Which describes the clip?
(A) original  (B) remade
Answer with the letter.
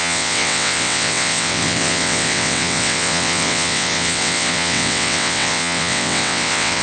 B